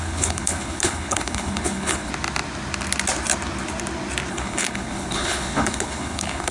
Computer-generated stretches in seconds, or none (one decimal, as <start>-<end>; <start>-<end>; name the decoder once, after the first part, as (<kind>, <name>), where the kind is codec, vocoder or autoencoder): 0.0-2.1 (codec, HILCodec); 4.3-6.5